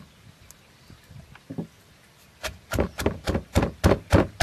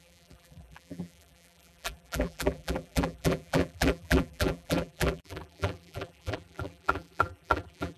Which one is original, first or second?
first